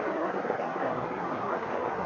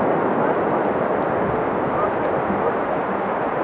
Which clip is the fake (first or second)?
first